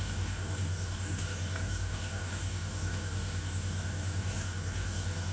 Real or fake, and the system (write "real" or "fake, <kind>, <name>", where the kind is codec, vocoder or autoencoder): fake, codec, DAC